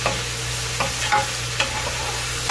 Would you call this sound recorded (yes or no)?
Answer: yes